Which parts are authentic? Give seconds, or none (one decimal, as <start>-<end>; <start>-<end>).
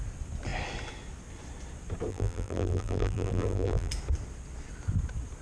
0.0-2.1; 3.9-5.4